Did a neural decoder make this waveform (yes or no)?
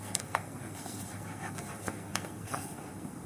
yes